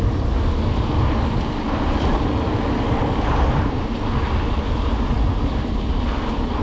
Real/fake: real